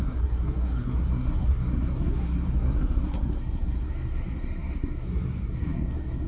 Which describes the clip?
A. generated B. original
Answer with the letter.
A